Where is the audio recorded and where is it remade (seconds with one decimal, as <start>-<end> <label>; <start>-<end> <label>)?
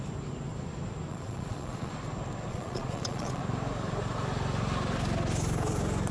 0.0-1.1 recorded; 1.1-1.9 remade; 1.9-2.5 recorded; 2.5-3.4 remade; 3.4-6.1 recorded